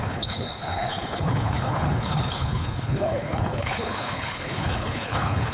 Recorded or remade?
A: remade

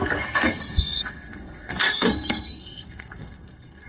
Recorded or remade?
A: remade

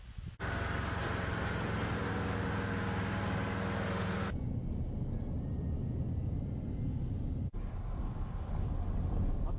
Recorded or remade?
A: recorded